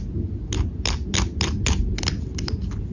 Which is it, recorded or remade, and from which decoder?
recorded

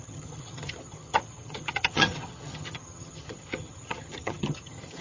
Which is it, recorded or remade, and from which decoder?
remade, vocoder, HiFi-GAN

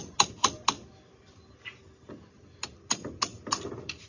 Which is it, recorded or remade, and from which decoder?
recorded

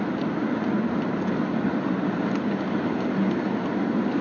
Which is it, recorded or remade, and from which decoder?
recorded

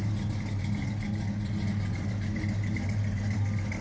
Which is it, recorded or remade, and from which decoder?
recorded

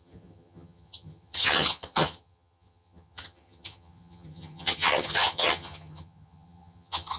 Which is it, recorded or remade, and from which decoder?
remade, vocoder, HiFi-GAN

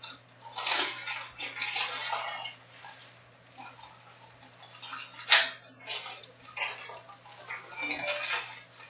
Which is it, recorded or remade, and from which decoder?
recorded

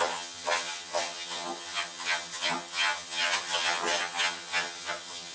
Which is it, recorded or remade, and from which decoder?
remade, vocoder, HiFi-GAN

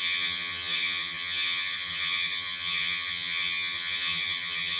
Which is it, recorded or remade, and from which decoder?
remade, vocoder, HiFi-GAN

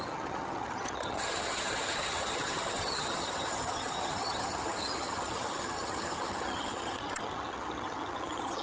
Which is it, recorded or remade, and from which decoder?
remade, vocoder, HiFi-GAN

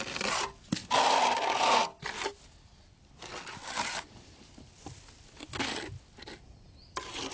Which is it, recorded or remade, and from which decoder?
recorded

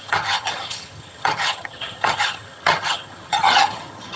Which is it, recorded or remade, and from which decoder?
remade, vocoder, HiFi-GAN